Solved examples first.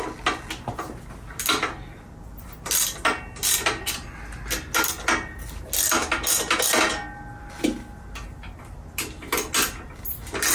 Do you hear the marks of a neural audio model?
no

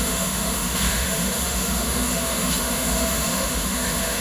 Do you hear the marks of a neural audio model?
yes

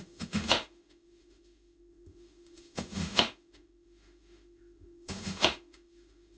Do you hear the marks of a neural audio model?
yes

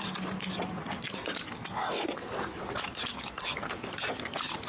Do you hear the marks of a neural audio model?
no